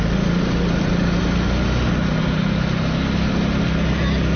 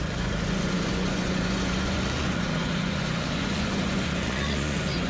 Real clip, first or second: first